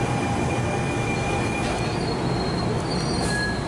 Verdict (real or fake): real